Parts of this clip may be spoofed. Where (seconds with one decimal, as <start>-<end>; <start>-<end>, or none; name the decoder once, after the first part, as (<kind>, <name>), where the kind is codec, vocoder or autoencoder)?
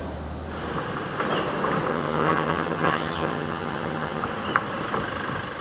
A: 1.9-4.2 (vocoder, HiFi-GAN)